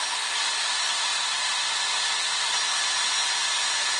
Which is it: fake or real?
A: real